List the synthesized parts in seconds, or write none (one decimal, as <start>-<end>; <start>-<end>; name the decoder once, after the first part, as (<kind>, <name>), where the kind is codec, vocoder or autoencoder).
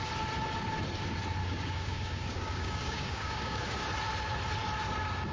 1.4-3.9 (codec, DAC)